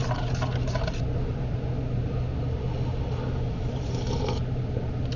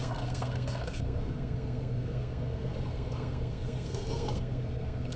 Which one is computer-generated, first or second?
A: second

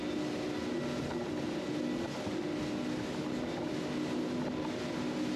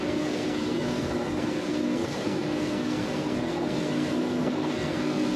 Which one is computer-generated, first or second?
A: second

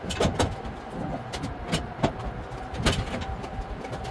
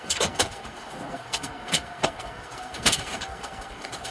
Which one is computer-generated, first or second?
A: second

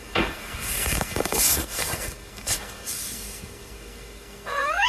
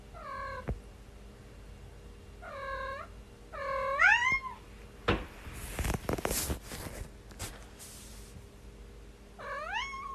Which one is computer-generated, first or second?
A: first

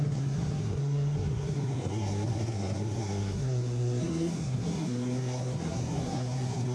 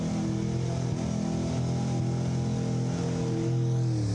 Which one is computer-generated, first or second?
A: first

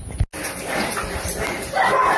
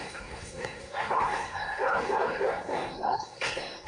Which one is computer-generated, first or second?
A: second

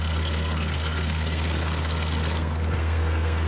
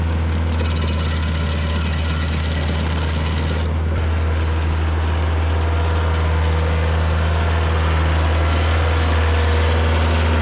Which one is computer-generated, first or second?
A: first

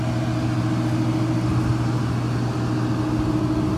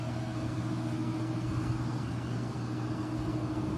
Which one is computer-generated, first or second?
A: second